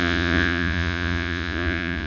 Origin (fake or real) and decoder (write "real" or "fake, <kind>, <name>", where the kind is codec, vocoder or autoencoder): fake, vocoder, Vocos